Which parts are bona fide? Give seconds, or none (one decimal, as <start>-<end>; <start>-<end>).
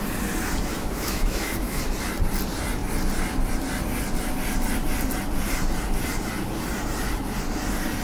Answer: 0.0-0.7; 1.8-8.0